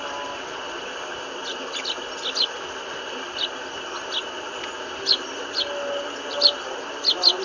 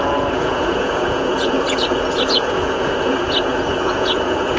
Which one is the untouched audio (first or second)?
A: first